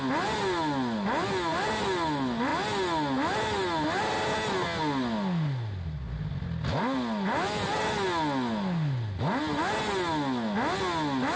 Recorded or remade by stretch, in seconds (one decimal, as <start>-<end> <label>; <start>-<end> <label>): 0.0-11.4 recorded